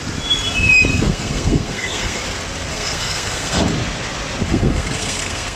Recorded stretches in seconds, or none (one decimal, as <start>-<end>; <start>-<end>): 0.0-0.9; 2.2-2.7; 3.6-4.5